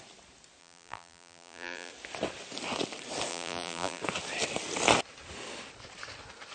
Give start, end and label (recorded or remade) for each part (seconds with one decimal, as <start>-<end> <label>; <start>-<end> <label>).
0.0-0.6 recorded; 0.6-1.9 remade; 1.9-3.3 recorded; 3.3-4.0 remade; 4.0-6.5 recorded